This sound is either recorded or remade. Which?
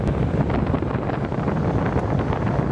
recorded